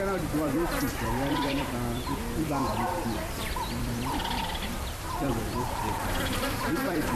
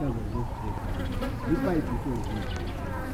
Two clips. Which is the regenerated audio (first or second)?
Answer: first